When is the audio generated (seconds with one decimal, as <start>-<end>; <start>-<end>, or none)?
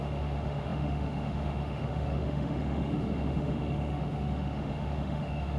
0.0-5.6